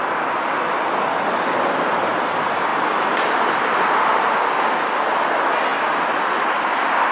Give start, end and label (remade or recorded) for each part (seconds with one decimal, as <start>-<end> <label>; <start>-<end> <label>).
0.0-7.1 recorded